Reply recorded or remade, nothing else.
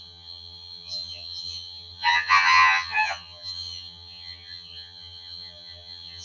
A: remade